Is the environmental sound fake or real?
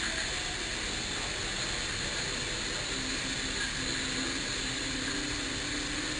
real